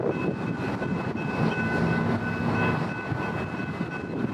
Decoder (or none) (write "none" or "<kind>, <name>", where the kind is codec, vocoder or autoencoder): none